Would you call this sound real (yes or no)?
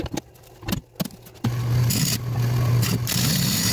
yes